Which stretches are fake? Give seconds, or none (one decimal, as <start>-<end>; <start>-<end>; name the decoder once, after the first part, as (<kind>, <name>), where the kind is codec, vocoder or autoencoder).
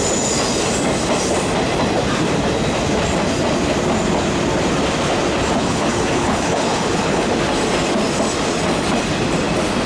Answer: 5.6-7.3 (codec, HILCodec)